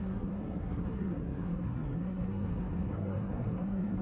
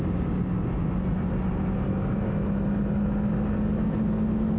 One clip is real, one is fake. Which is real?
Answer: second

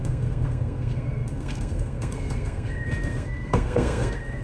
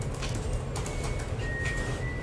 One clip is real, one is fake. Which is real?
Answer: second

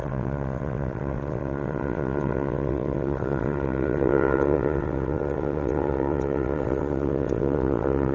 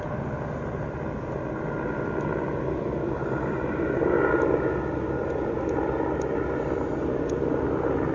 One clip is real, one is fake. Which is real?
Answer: second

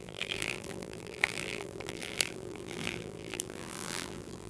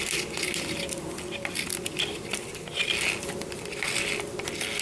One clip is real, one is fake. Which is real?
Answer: second